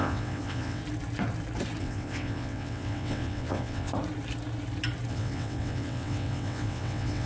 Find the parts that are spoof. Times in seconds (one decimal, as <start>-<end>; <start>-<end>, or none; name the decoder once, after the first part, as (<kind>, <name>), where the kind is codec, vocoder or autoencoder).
0.0-0.8 (vocoder, WaveNeXt); 1.8-3.9; 5.1-7.3